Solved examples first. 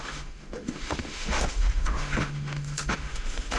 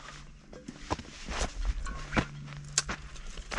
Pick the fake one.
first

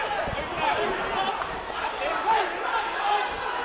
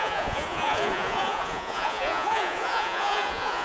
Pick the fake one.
second